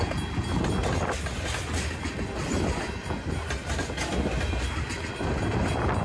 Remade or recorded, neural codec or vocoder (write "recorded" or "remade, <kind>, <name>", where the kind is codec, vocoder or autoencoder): recorded